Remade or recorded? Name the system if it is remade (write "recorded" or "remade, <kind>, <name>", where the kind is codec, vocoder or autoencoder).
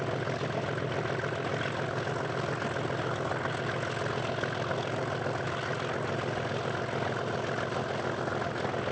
recorded